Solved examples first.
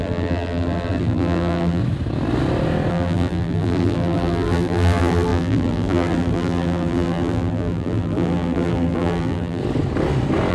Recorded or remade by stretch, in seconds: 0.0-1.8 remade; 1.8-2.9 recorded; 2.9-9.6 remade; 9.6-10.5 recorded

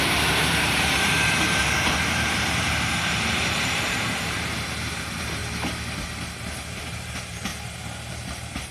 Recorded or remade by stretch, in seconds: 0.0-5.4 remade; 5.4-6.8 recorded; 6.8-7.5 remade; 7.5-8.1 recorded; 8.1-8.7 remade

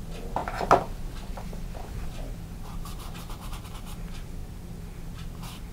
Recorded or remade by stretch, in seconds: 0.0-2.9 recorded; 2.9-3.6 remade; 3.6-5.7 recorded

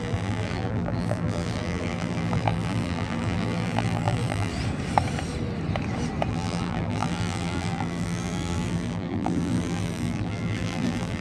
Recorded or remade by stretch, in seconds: 0.0-4.5 remade; 4.5-6.3 recorded; 6.3-11.2 remade

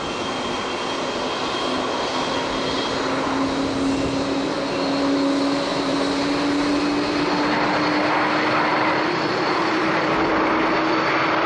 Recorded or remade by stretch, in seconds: 0.0-5.7 recorded; 5.7-6.2 remade; 6.2-8.7 recorded; 8.7-10.1 remade; 10.1-11.5 recorded

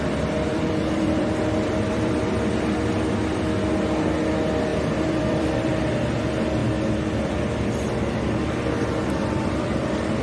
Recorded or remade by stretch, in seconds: 0.0-0.5 recorded; 0.5-2.8 remade; 2.8-4.7 recorded; 4.7-5.8 remade; 5.8-10.2 recorded

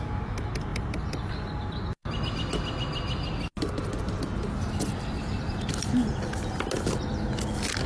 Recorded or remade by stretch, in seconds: 0.0-0.7 recorded; 0.7-1.3 remade; 1.3-4.9 recorded; 4.9-5.9 remade; 5.9-7.9 recorded